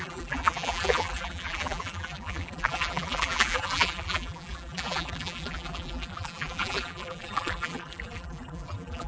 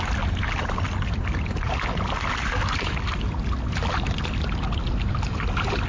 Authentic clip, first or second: second